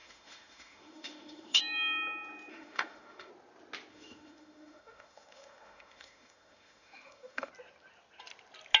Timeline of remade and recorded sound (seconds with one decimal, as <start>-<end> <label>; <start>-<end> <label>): 0.0-1.6 remade; 1.6-2.5 recorded; 2.5-3.3 remade; 3.3-3.9 recorded; 3.9-7.5 remade; 7.5-8.8 recorded